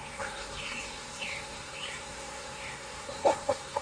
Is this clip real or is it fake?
fake